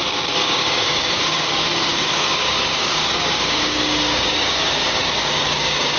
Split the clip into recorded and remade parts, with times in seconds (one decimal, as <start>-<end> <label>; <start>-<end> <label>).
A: 0.0-6.0 remade